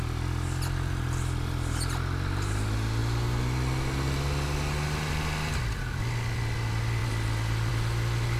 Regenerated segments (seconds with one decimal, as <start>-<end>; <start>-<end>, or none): none